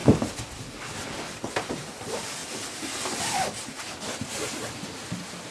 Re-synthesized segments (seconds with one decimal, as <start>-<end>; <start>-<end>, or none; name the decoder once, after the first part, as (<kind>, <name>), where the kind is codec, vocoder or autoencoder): 1.3-2.4 (vocoder, BigVGAN v2); 4.2-5.5